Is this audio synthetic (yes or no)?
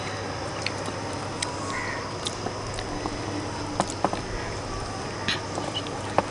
no